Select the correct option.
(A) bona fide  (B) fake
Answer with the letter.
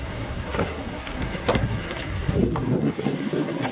B